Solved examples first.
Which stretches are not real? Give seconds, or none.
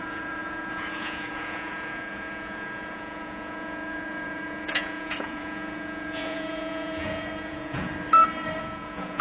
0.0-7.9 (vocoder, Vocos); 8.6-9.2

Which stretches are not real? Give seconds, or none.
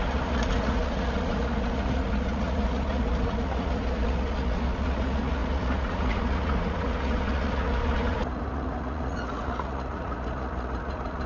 0.0-11.3 (vocoder, Vocos)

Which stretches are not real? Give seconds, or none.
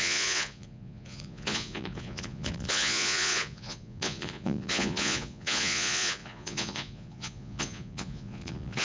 0.0-8.8 (vocoder, Vocos)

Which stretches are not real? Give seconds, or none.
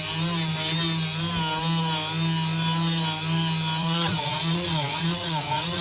3.8-5.8 (vocoder, Vocos)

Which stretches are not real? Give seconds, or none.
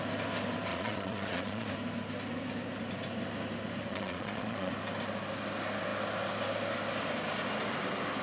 0.7-1.7 (vocoder, Vocos); 3.9-4.7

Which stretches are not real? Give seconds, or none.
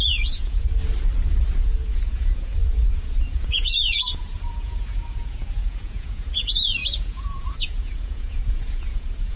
0.0-0.8 (vocoder, Vocos); 1.6-9.4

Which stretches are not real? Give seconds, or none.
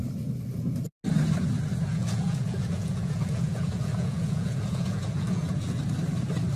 1.9-5.8 (vocoder, Vocos)